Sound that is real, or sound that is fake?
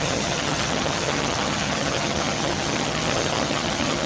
fake